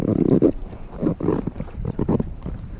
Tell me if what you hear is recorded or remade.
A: remade